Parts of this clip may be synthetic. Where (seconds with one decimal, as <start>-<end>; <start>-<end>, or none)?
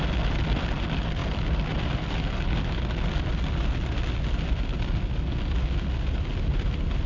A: none